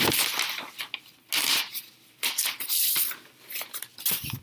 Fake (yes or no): no